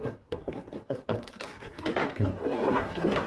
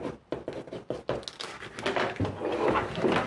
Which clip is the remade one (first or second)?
first